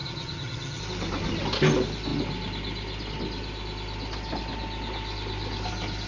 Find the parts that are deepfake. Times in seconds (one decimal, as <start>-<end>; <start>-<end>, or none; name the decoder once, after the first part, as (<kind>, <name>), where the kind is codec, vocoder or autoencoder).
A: 0.0-0.8 (vocoder, HiFi-GAN)